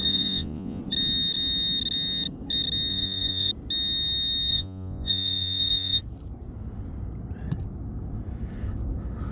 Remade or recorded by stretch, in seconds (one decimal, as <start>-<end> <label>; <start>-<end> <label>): 0.0-0.8 remade; 0.8-2.9 recorded; 2.9-3.5 remade; 3.5-4.5 recorded; 4.5-6.0 remade; 6.0-9.3 recorded